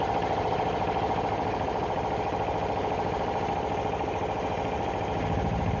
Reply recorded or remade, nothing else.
remade